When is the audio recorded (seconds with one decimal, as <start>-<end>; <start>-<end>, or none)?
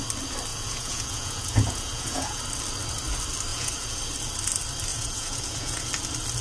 0.0-0.5; 2.4-3.5; 4.0-4.9; 5.9-6.4